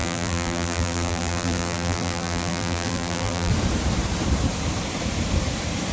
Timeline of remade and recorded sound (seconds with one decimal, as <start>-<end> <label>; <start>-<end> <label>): 0.0-3.5 remade; 3.5-5.9 recorded